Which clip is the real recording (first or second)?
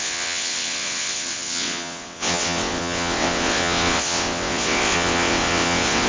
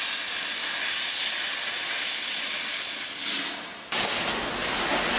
second